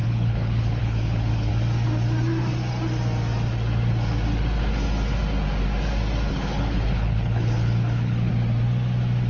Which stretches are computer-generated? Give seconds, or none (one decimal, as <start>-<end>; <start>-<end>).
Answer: 0.0-1.5; 6.3-8.3